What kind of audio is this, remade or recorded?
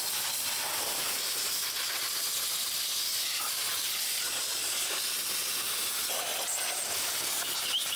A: recorded